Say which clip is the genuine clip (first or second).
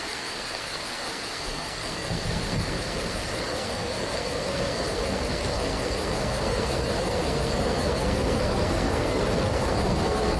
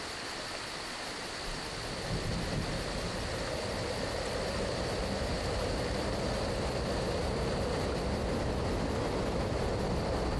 second